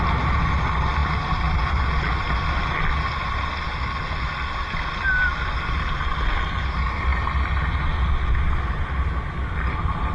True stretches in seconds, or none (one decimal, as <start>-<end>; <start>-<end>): 0.0-10.1